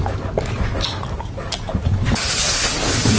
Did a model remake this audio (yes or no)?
no